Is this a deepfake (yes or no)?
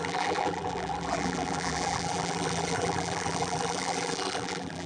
yes